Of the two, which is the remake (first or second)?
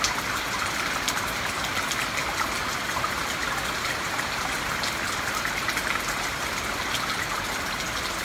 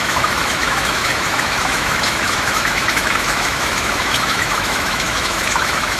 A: second